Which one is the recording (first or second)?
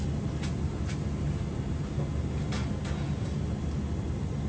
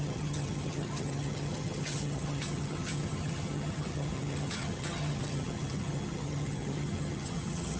first